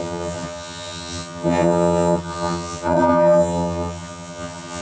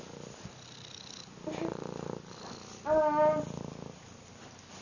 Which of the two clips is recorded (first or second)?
second